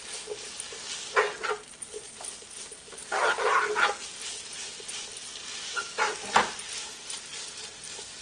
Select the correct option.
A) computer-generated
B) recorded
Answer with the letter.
B